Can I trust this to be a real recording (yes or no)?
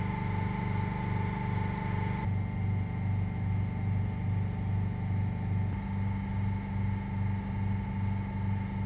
yes